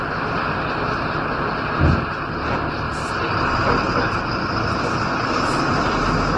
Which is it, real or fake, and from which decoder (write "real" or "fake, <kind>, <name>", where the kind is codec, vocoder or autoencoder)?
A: real